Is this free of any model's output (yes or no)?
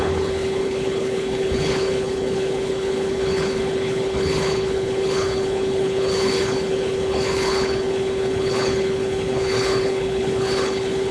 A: no